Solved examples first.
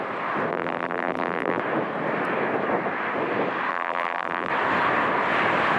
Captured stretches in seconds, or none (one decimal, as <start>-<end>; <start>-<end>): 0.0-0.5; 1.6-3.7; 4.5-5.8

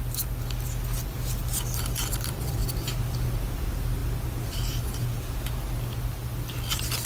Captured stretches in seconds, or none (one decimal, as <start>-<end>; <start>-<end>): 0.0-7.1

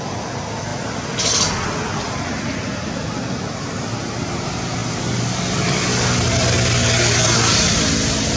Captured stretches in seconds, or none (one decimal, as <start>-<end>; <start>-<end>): 0.0-8.4